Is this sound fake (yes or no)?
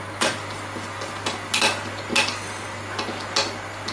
no